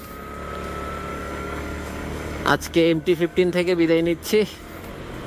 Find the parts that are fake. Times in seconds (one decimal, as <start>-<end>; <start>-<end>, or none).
1.1-4.3